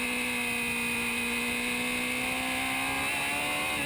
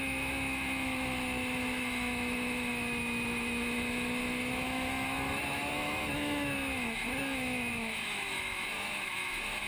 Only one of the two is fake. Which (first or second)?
second